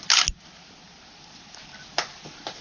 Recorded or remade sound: recorded